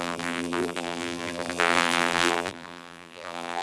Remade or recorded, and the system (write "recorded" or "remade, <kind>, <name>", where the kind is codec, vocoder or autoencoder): remade, vocoder, BigVGAN v2